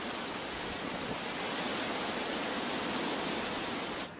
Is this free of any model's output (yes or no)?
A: yes